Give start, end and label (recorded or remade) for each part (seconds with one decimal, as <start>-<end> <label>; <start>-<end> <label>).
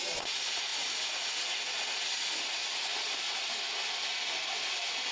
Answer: 0.0-5.1 recorded